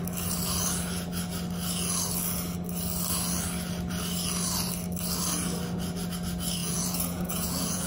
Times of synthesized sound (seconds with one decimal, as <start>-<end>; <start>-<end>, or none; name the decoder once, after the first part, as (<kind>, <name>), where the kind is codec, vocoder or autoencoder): 6.6-7.9 (vocoder, Vocos)